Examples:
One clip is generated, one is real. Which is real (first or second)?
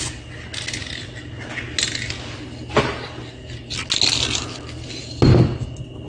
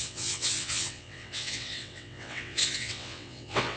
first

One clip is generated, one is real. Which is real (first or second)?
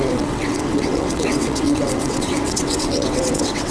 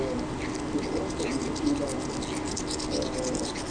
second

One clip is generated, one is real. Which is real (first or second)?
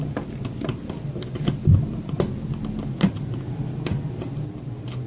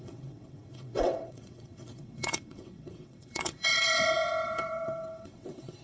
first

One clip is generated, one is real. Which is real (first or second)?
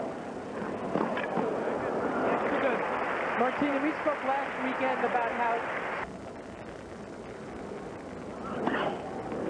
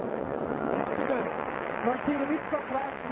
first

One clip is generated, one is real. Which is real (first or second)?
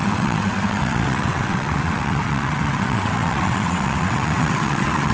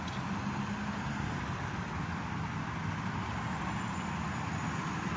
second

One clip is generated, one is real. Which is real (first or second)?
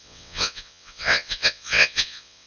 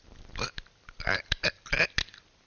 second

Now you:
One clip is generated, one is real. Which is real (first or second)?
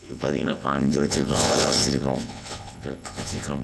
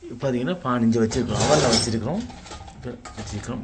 second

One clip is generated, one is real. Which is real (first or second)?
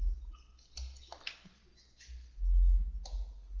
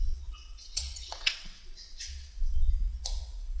first